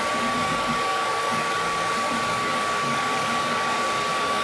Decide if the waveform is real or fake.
fake